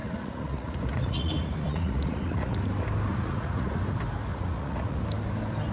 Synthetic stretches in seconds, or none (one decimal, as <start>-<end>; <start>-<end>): 0.0-2.6; 3.1-3.8; 4.3-5.0